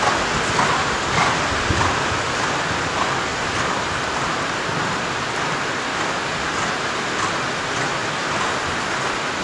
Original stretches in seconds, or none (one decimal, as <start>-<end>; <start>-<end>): 0.0-9.4